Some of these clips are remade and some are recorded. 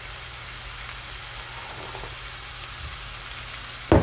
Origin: recorded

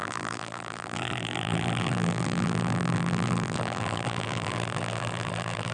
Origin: remade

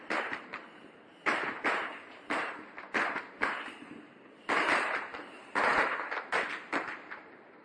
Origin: remade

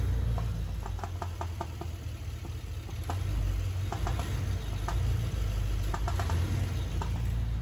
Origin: recorded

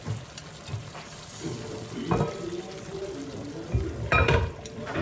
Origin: remade